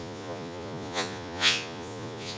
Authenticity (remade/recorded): remade